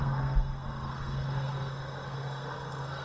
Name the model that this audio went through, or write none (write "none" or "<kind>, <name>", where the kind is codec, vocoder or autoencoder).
codec, SNAC